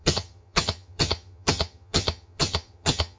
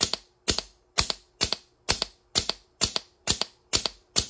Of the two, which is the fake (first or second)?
first